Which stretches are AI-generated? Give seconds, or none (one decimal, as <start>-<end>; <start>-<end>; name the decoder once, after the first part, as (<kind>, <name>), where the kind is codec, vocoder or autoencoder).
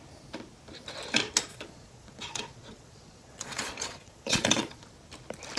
1.5-4.9 (vocoder, Vocos)